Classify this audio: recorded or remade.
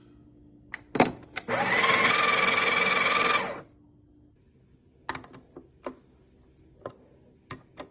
recorded